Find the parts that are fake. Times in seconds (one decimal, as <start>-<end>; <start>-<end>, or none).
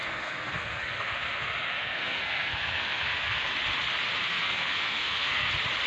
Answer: 0.0-3.5; 4.3-5.5